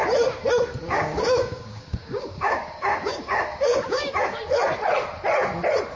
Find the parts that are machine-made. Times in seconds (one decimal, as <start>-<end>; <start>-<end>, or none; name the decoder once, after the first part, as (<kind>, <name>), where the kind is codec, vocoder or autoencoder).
0.8-4.4 (codec, DAC)